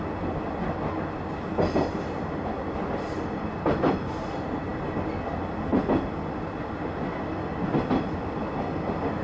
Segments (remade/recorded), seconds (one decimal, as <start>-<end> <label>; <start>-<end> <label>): 0.0-4.7 recorded; 4.7-5.3 remade; 5.3-9.2 recorded